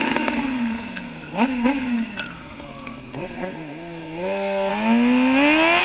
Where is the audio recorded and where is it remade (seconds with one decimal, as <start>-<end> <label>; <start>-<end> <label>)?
0.0-4.7 remade; 4.7-5.8 recorded